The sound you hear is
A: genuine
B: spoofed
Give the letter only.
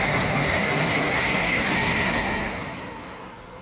B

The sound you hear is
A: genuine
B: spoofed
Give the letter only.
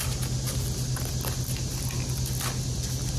A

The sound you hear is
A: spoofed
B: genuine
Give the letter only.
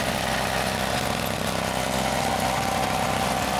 B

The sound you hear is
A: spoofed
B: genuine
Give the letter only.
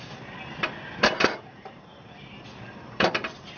A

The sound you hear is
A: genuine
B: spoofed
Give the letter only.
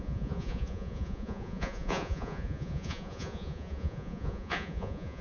B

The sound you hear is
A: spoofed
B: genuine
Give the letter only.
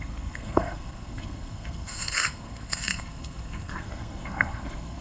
A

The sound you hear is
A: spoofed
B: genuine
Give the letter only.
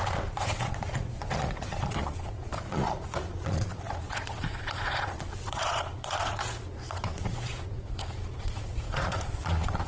A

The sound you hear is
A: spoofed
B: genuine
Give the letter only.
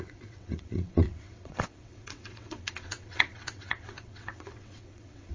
A